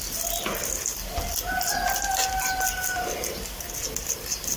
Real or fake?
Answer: real